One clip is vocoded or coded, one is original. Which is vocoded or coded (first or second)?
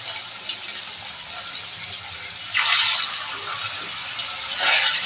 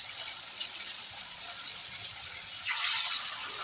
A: second